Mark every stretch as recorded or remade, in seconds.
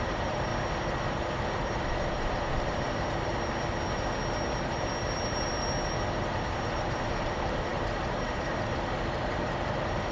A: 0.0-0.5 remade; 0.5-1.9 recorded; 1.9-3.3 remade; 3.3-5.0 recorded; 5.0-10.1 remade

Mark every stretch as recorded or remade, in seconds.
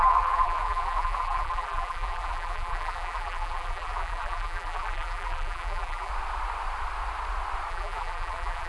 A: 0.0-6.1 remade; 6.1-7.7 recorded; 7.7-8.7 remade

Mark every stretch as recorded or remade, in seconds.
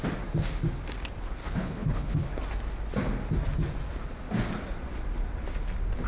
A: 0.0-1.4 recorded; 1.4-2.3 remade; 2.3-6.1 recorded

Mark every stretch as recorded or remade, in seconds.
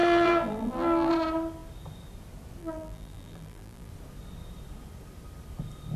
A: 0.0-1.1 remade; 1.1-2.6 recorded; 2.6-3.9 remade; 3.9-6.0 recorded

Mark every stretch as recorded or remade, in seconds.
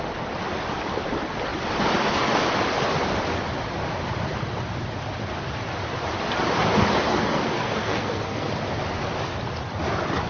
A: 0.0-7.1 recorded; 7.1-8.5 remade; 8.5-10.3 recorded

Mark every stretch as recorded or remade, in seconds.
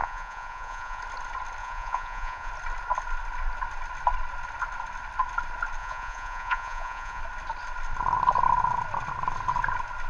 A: 0.0-1.0 remade; 1.0-1.6 recorded; 1.6-2.5 remade; 2.5-5.8 recorded; 5.8-7.2 remade; 7.2-10.1 recorded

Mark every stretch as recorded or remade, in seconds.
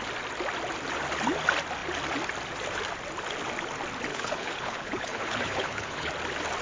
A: 0.0-4.1 recorded; 4.1-6.1 remade; 6.1-6.6 recorded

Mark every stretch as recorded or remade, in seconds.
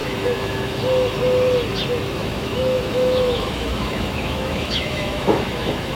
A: 0.0-0.8 remade; 0.8-2.2 recorded; 2.2-5.9 remade